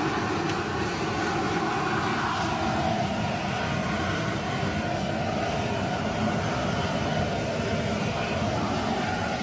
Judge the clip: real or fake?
real